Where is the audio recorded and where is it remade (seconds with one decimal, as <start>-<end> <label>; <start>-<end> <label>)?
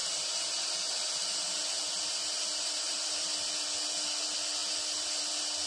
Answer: 0.0-5.7 recorded